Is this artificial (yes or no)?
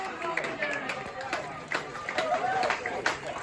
yes